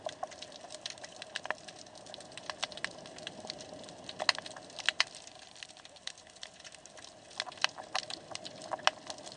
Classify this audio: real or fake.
real